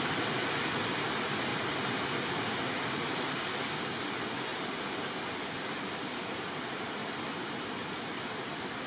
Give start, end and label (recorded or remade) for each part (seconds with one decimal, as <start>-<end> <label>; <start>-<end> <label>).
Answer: 0.0-8.9 recorded

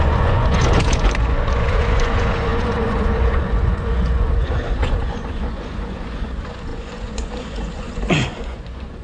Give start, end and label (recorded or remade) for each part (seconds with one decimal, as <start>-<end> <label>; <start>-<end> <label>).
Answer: 0.0-9.0 remade

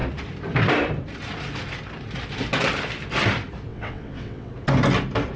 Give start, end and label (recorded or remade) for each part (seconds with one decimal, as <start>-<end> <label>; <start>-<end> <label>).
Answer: 0.0-3.7 recorded; 3.7-4.5 remade; 4.5-5.4 recorded

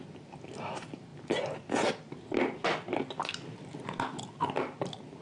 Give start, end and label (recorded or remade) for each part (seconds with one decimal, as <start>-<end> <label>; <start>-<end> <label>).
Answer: 0.0-5.2 recorded

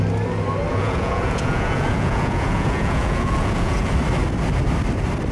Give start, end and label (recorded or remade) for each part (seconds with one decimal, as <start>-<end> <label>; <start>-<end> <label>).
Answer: 0.0-0.7 recorded; 0.7-3.9 remade; 3.9-5.3 recorded

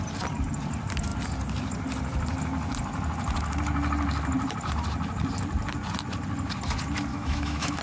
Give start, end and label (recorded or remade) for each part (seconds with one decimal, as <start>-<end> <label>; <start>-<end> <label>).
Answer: 0.0-7.1 recorded; 7.1-7.8 remade

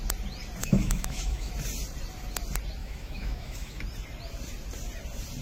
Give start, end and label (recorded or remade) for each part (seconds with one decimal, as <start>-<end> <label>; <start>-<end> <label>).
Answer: 0.0-0.6 recorded; 0.6-1.5 remade; 1.5-2.8 recorded; 2.8-3.8 remade; 3.8-5.4 recorded

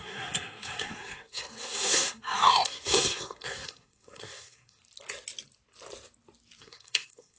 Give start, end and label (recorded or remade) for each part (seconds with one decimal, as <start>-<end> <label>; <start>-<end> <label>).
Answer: 0.0-4.8 remade; 4.8-6.6 recorded; 6.6-7.4 remade